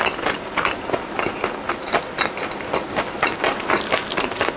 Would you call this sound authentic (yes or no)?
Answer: yes